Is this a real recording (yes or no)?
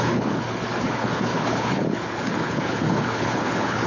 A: no